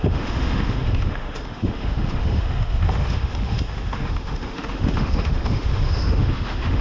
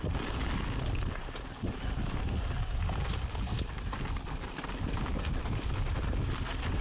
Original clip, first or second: second